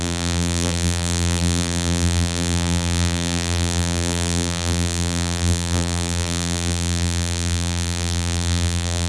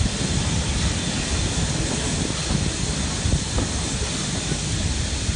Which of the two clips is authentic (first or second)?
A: second